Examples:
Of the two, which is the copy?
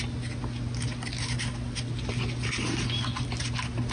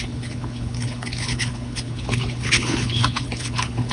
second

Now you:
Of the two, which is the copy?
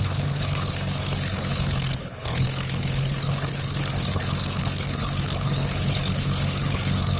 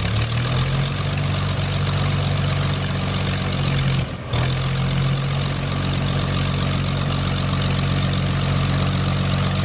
first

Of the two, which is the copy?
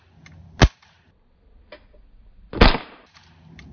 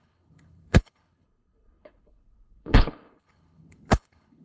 second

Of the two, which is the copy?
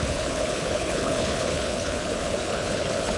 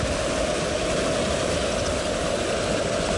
first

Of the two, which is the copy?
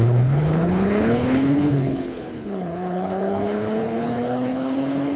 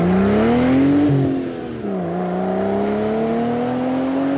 first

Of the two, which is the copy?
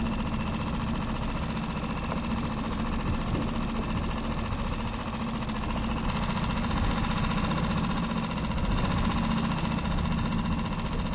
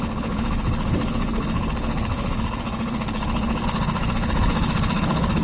second